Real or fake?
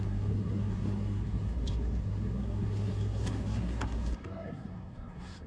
fake